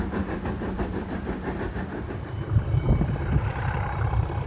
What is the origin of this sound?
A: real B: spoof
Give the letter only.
B